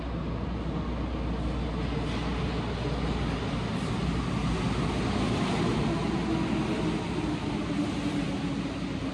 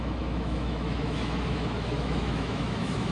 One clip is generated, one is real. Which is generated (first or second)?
second